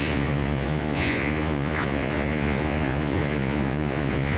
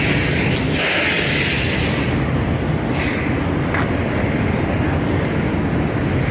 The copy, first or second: first